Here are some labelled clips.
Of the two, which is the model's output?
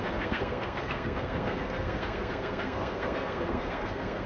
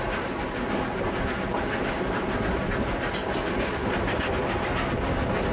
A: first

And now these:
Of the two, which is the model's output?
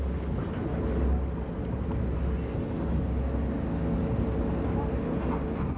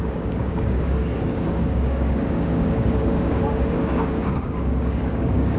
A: second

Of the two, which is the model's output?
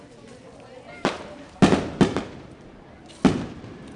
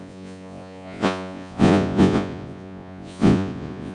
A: second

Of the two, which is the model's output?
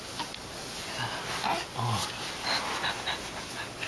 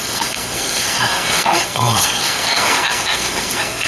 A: second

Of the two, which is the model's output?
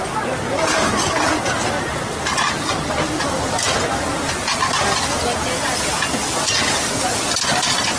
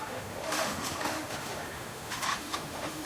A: second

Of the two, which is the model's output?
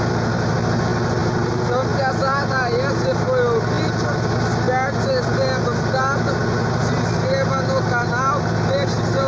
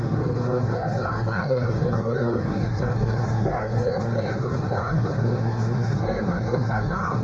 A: second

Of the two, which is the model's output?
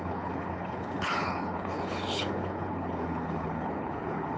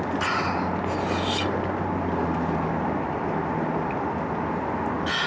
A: first